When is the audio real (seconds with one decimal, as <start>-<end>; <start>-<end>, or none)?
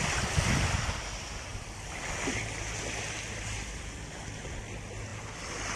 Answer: 0.0-5.8